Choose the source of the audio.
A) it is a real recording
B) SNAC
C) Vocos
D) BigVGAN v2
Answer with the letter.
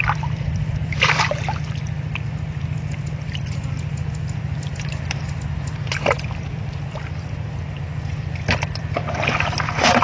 A